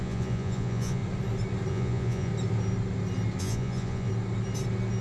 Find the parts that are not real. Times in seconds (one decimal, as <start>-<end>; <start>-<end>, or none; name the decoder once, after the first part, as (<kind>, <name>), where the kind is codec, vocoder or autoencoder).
0.0-1.0 (vocoder, Vocos); 1.7-2.3; 3.4-4.1